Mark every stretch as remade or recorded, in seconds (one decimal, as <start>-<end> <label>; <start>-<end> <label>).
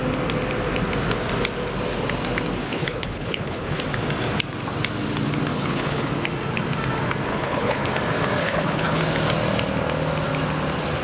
0.0-2.6 recorded; 2.6-3.8 remade; 3.8-5.5 recorded; 5.5-6.1 remade; 6.1-7.3 recorded; 7.3-7.9 remade; 7.9-8.4 recorded; 8.4-9.0 remade; 9.0-11.0 recorded